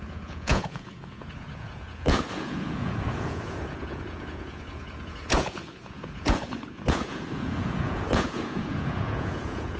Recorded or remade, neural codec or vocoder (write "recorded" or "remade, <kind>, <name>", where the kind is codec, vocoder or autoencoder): remade, vocoder, Vocos